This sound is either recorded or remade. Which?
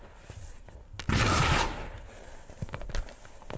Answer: recorded